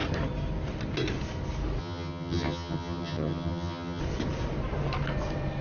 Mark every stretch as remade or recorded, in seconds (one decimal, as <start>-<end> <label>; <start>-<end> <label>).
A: 0.0-1.8 recorded; 1.8-4.0 remade; 4.0-5.6 recorded